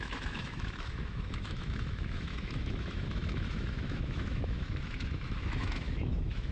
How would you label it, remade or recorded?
remade